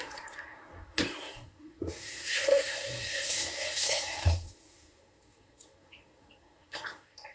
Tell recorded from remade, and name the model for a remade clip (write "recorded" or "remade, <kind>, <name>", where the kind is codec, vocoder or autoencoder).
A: remade, codec, SNAC